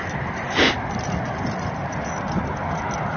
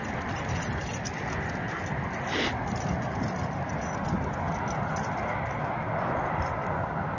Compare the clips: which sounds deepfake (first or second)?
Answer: first